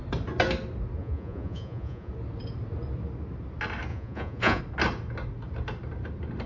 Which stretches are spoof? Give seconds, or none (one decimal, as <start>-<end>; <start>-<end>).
1.0-2.1; 3.9-4.6